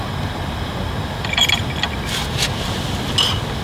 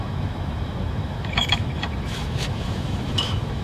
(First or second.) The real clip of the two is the first